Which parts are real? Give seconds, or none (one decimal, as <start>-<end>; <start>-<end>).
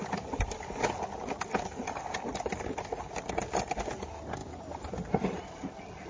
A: 0.0-4.4; 5.4-6.1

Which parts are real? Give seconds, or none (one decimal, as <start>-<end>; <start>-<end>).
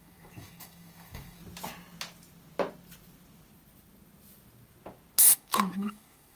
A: 1.4-5.2